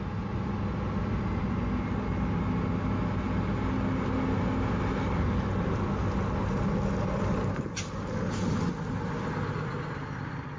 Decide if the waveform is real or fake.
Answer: real